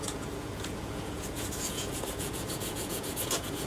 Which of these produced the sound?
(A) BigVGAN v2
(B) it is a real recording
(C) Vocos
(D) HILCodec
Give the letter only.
C